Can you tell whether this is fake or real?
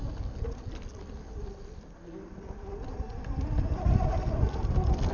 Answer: real